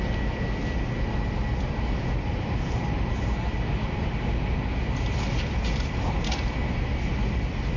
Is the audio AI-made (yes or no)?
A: no